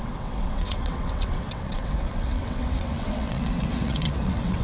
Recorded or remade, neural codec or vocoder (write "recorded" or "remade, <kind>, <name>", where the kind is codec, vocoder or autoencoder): remade, vocoder, WaveNeXt